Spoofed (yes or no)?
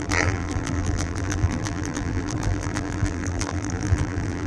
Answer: yes